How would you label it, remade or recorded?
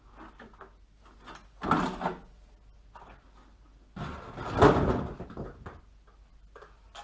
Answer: recorded